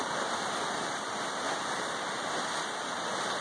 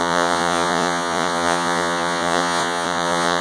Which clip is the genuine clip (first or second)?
first